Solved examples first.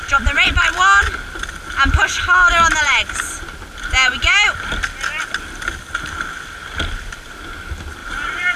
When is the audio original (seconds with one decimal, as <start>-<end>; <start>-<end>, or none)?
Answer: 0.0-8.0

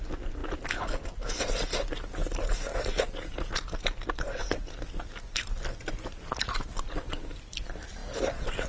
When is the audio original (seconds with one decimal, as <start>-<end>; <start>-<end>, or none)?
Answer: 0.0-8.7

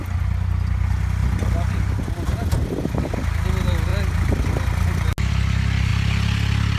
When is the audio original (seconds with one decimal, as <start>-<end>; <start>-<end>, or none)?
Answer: 0.0-6.8